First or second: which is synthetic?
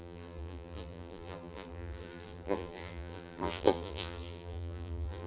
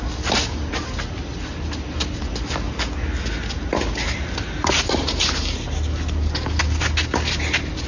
first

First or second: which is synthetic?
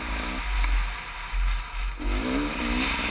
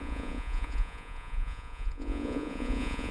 second